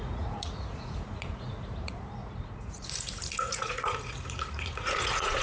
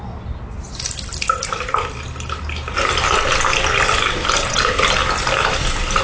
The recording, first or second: second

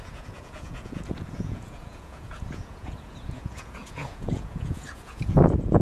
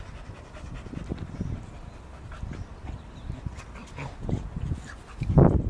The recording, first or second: second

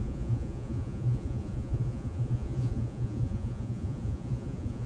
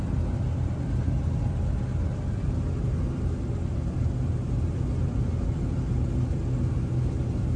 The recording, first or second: second